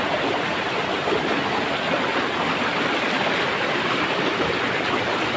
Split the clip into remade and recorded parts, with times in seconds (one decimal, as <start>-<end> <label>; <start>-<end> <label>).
0.0-2.1 recorded; 2.1-5.4 remade